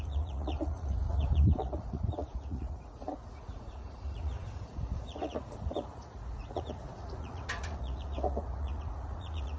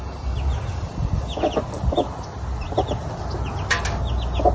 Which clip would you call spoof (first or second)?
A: first